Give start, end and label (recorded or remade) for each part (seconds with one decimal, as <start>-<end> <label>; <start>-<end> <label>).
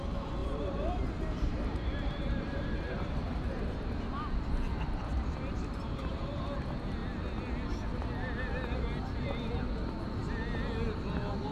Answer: 0.0-0.4 recorded; 0.4-3.9 remade; 3.9-5.1 recorded; 5.1-6.2 remade; 6.2-11.5 recorded